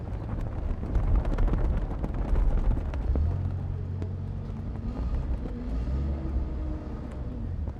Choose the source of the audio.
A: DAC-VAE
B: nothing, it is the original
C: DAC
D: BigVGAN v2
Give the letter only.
B